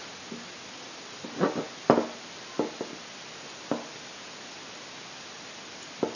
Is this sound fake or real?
real